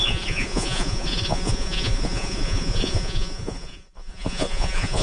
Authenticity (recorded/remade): remade